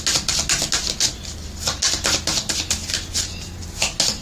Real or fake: real